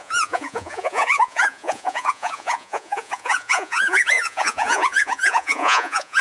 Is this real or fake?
fake